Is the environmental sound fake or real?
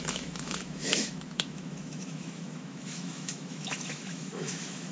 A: fake